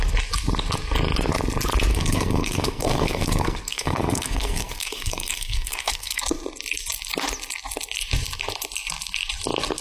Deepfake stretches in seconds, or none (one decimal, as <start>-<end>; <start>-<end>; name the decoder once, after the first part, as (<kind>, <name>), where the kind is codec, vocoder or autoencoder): 1.9-6.2 (codec, SNAC)